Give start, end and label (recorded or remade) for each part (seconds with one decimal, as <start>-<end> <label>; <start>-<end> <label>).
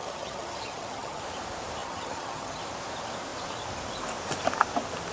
0.0-1.2 remade; 1.2-1.8 recorded; 1.8-2.6 remade; 2.6-5.1 recorded